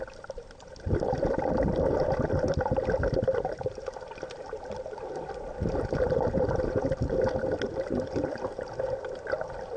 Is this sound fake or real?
fake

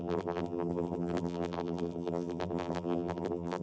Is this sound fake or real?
fake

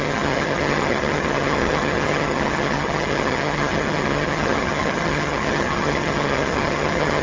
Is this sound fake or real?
fake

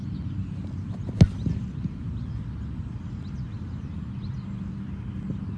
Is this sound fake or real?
real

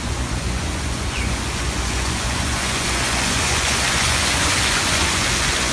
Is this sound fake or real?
fake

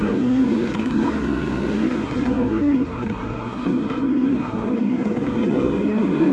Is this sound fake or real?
fake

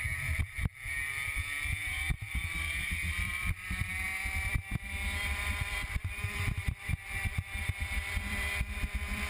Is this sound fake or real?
fake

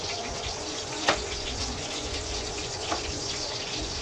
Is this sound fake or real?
fake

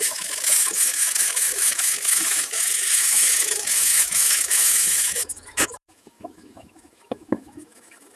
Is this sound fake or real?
fake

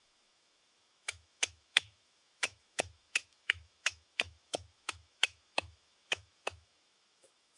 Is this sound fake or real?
fake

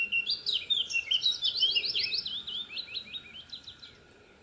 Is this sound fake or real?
real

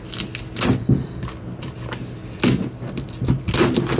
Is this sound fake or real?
real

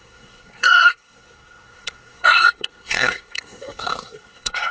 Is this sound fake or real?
fake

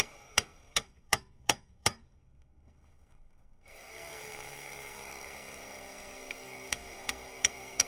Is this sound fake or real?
fake